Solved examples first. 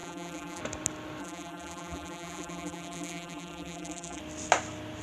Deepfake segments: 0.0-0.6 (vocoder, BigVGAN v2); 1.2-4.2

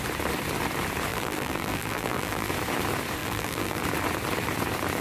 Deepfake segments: 1.1-2.5 (vocoder, BigVGAN v2); 3.2-3.8

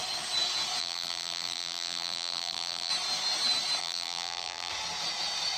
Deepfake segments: 0.8-2.9 (vocoder, BigVGAN v2); 3.8-4.7

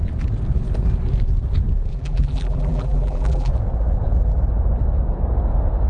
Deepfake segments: 1.9-3.5 (vocoder, BigVGAN v2)

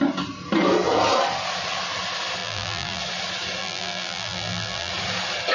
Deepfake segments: 2.4-3.0 (vocoder, BigVGAN v2); 3.6-4.9

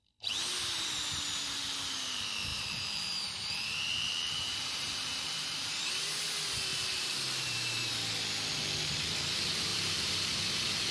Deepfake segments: 2.5-5.9 (vocoder, BigVGAN v2); 6.7-7.9; 9.7-10.4

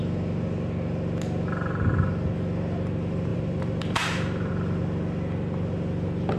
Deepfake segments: 3.3-4.5 (vocoder, BigVGAN v2)